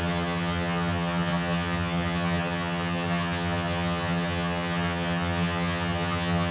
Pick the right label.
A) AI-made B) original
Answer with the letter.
A